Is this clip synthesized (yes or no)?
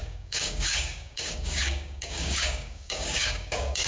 yes